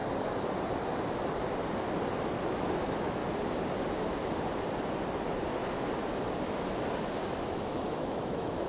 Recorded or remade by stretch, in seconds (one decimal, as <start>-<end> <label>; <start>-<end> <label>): 0.0-2.4 recorded; 2.4-3.2 remade; 3.2-7.5 recorded; 7.5-8.7 remade